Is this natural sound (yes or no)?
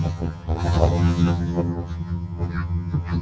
no